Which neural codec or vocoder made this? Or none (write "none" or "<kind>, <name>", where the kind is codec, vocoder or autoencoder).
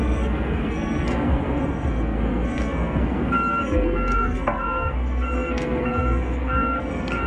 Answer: codec, SNAC